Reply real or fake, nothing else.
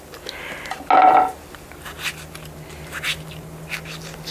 real